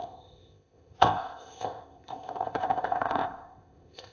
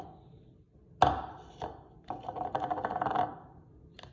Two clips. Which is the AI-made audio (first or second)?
first